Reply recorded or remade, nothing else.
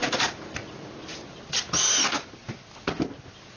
recorded